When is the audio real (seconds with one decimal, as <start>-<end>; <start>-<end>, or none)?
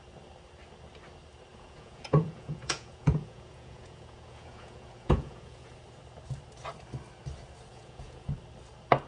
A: 0.0-1.5; 5.7-7.7; 8.3-9.1